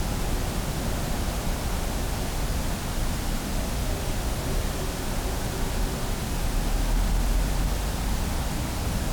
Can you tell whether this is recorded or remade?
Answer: recorded